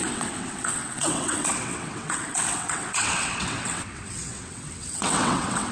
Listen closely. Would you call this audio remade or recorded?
remade